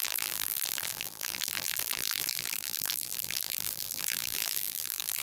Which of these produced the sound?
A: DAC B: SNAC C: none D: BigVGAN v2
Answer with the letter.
D